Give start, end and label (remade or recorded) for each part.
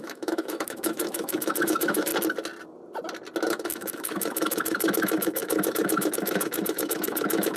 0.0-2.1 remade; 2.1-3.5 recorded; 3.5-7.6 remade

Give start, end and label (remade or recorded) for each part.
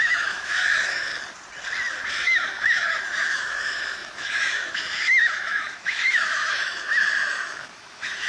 0.0-1.1 remade; 1.1-2.1 recorded; 2.1-8.3 remade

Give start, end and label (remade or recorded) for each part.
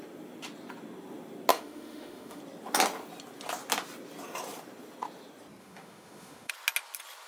0.0-1.5 recorded; 1.5-2.4 remade; 2.4-5.6 recorded; 5.6-6.5 remade; 6.5-7.3 recorded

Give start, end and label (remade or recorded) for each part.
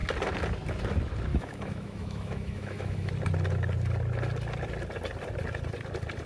0.0-1.3 recorded; 1.3-3.1 remade; 3.1-6.3 recorded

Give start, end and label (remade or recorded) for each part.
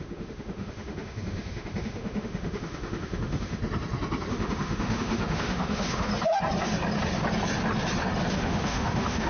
0.0-3.6 remade; 3.6-4.3 recorded; 4.3-6.1 remade; 6.1-8.3 recorded; 8.3-9.3 remade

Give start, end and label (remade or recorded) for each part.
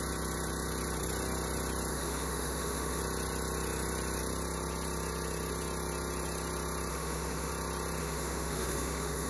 0.0-1.9 recorded; 1.9-3.0 remade; 3.0-6.9 recorded; 6.9-7.5 remade; 7.5-8.0 recorded; 8.0-9.3 remade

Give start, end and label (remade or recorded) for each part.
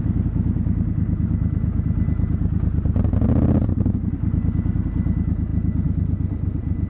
0.0-6.9 recorded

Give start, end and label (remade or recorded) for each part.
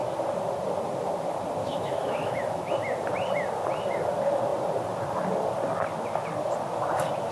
0.0-1.6 recorded; 1.6-2.7 remade; 2.7-7.3 recorded